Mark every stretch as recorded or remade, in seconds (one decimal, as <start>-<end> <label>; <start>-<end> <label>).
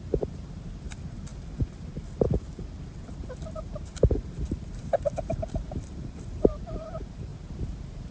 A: 0.0-1.3 remade; 1.3-3.5 recorded; 3.5-7.3 remade; 7.3-8.1 recorded